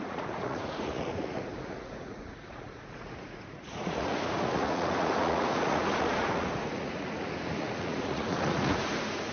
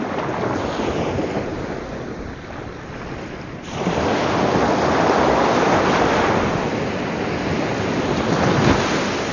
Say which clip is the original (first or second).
second